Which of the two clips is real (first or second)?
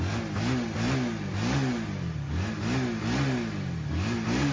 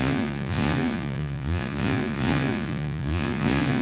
first